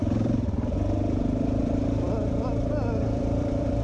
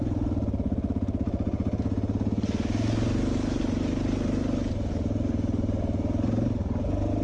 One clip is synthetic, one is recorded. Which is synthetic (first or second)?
first